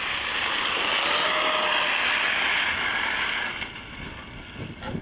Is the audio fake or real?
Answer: real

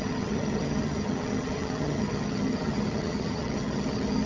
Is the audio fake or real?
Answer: fake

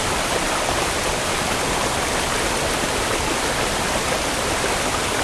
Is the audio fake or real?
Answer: fake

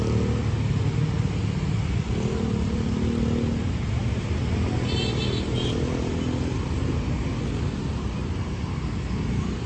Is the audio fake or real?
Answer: real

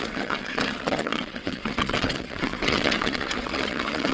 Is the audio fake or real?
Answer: fake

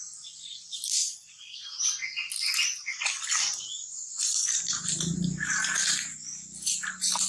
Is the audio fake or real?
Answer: real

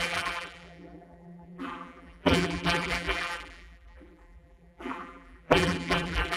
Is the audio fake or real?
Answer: fake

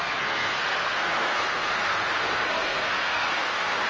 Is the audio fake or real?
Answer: fake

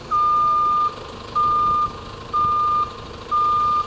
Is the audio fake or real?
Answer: real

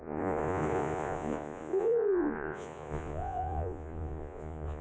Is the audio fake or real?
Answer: fake